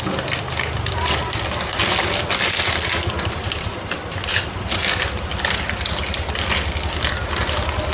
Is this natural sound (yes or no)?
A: yes